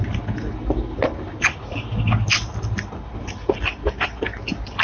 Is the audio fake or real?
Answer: real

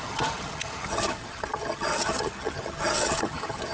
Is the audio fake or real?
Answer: fake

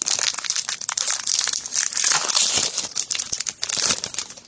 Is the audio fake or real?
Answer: real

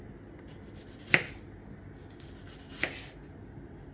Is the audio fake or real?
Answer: real